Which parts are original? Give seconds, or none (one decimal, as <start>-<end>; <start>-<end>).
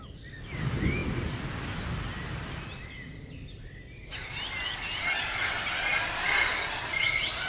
0.0-7.5